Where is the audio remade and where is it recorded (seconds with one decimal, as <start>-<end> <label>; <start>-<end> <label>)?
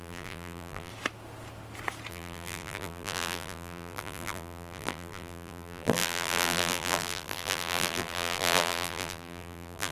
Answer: 0.0-0.9 remade; 0.9-2.1 recorded; 2.1-9.9 remade